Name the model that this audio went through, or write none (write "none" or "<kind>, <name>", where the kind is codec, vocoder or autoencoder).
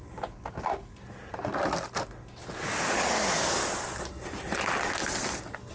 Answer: none